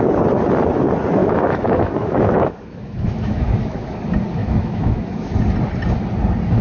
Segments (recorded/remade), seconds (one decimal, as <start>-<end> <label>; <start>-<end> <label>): 0.0-1.2 recorded; 1.2-4.0 remade; 4.0-4.4 recorded; 4.4-5.3 remade; 5.3-6.6 recorded